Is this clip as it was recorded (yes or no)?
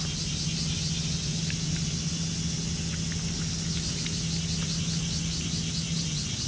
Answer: yes